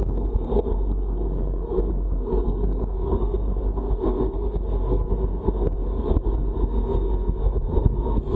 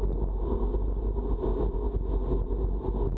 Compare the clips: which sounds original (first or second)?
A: second